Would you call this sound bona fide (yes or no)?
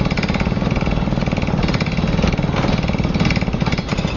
yes